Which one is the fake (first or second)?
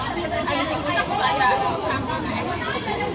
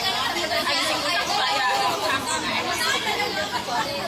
first